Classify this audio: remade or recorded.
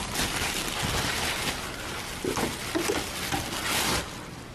recorded